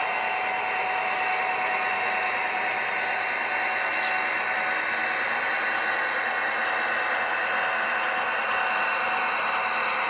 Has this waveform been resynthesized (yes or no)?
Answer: no